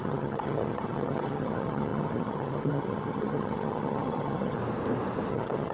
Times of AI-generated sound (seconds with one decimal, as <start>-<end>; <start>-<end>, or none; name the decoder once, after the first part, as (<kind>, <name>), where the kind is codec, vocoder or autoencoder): 0.0-4.6 (vocoder, HiFi-GAN); 5.3-5.7